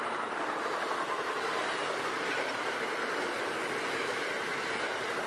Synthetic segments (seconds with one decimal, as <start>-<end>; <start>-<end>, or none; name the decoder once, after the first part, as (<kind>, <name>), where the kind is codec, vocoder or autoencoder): none